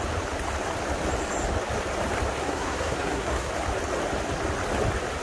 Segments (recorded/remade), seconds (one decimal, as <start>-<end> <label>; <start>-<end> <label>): 0.0-2.4 recorded; 2.4-3.5 remade; 3.5-5.2 recorded